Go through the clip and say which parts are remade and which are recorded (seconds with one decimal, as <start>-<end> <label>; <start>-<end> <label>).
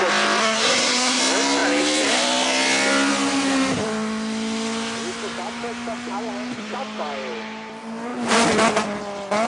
0.0-0.4 recorded; 0.4-1.2 remade; 1.2-9.5 recorded